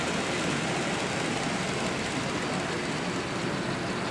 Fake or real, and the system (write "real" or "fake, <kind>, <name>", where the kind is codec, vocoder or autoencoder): real